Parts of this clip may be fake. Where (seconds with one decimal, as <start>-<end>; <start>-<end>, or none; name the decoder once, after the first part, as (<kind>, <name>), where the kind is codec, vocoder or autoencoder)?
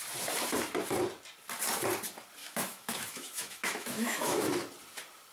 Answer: 2.4-4.5 (autoencoder, DAC-VAE)